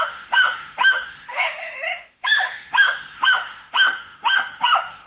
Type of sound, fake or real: fake